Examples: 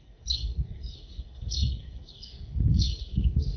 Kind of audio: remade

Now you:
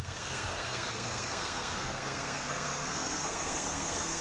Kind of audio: remade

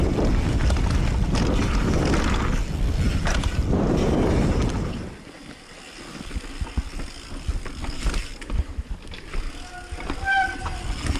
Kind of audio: recorded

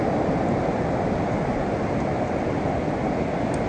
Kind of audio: recorded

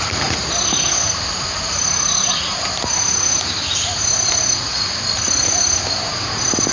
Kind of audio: recorded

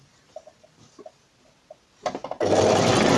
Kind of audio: recorded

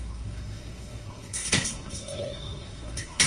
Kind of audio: remade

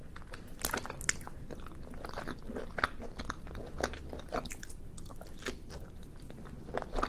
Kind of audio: recorded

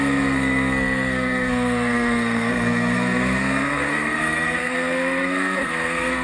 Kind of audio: remade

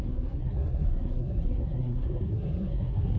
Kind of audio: remade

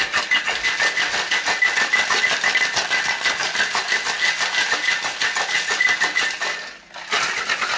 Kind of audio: recorded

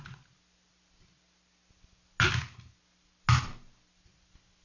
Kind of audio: recorded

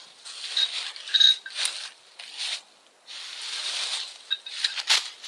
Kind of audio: recorded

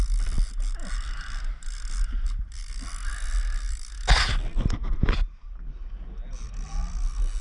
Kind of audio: recorded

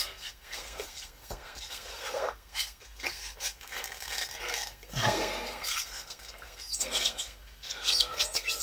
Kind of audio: remade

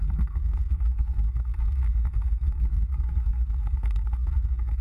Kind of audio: remade